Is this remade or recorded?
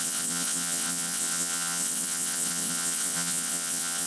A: remade